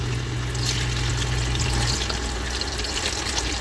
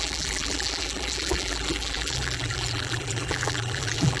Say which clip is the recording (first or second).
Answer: first